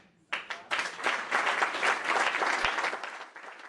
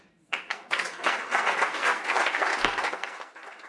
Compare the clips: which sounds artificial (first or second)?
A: second